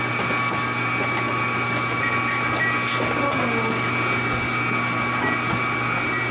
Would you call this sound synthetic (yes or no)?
no